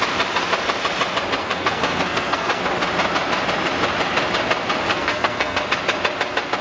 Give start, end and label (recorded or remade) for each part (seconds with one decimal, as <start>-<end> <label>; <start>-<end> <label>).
0.0-1.4 recorded; 1.4-2.6 remade; 2.6-4.9 recorded; 4.9-5.6 remade; 5.6-6.6 recorded